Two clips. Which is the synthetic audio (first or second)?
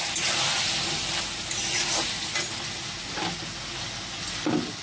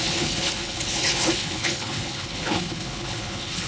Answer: second